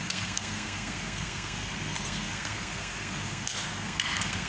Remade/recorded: remade